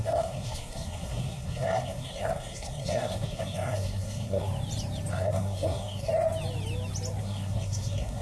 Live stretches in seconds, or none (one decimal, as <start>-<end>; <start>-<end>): 4.5-5.1; 6.1-7.2